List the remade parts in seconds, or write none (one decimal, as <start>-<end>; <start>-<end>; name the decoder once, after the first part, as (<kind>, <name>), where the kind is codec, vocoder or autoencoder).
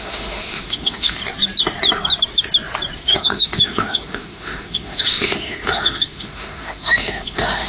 0.0-1.2 (autoencoder, DAC-VAE); 3.0-7.7